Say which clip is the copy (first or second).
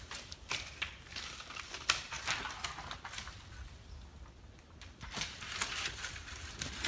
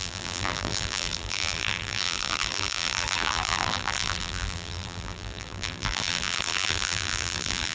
second